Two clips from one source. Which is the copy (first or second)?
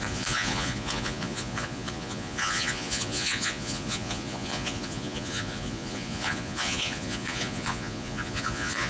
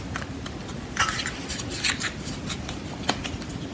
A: first